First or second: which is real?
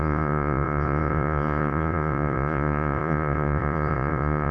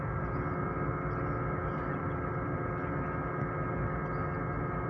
second